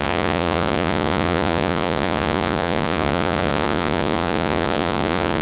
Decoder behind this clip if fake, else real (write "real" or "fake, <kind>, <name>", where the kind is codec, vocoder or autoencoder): fake, vocoder, Vocos